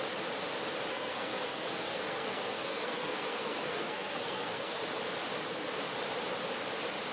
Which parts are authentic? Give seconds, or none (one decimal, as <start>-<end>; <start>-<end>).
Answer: 0.0-0.9; 4.8-7.1

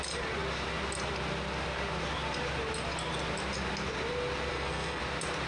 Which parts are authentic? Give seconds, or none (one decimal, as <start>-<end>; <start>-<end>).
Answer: 0.0-4.5; 5.0-5.5

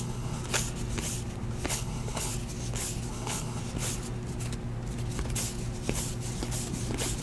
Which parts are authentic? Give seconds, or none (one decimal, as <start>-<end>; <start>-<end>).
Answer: 0.4-1.7; 2.3-3.1; 3.6-7.2